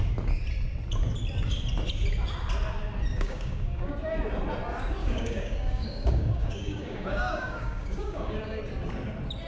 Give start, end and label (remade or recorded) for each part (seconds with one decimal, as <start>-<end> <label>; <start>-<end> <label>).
0.0-3.1 recorded; 3.1-3.9 remade; 3.9-5.0 recorded; 5.0-8.6 remade; 8.6-9.5 recorded